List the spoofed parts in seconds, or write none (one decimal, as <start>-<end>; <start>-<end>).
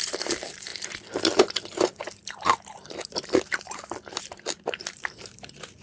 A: 0.0-5.8